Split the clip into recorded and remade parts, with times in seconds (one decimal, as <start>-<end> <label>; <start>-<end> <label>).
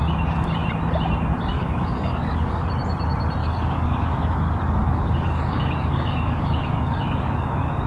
0.0-1.5 recorded; 1.5-2.7 remade; 2.7-3.4 recorded; 3.4-7.9 remade